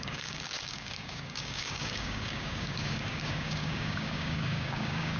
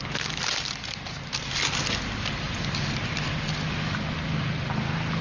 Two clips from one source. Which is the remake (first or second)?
first